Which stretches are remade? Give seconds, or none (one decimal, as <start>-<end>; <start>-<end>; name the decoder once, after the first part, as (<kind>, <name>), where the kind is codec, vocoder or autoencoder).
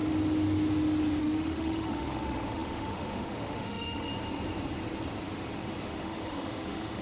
1.2-4.1 (autoencoder, DAC-VAE); 5.8-7.0